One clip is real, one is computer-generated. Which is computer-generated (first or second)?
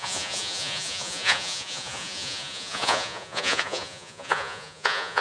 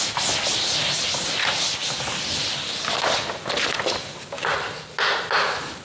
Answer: first